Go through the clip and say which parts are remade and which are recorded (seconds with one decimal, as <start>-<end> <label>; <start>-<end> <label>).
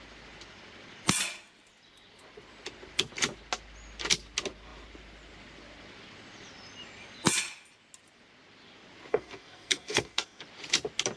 0.0-9.1 recorded; 9.1-10.4 remade; 10.4-11.2 recorded